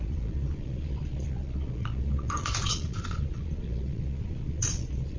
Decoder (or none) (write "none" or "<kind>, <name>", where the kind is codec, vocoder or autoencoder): vocoder, Vocos